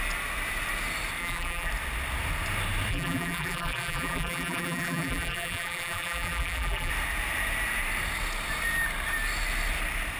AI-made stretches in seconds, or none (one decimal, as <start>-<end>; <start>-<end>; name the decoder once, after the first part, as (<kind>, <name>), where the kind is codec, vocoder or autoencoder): 1.2-1.7 (vocoder, BigVGAN v2); 2.9-6.9